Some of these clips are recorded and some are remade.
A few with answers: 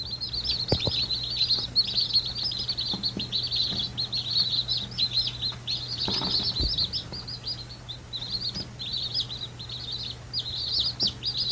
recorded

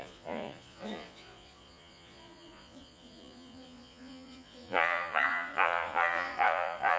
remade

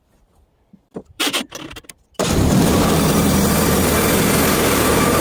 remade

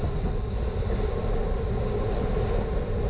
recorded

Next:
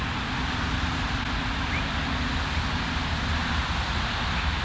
recorded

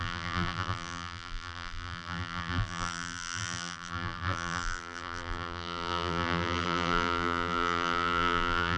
remade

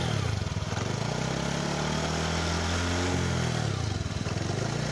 recorded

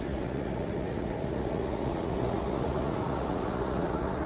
remade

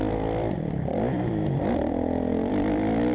remade